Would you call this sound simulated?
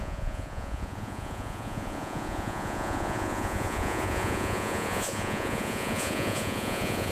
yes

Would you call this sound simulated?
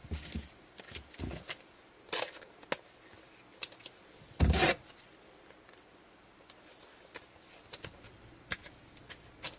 no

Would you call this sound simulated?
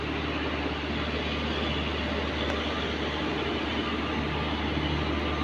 no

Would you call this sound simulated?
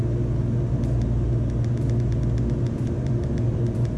no